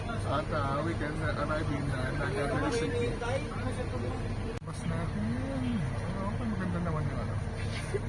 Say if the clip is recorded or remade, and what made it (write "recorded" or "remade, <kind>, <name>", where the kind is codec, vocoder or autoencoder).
recorded